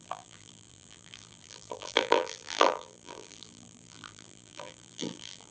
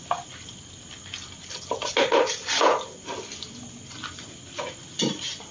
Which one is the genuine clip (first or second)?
second